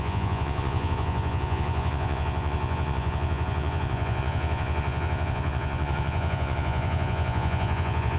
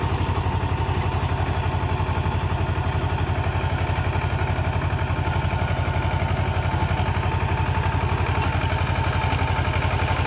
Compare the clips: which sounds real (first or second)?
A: second